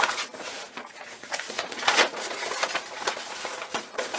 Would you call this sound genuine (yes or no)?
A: no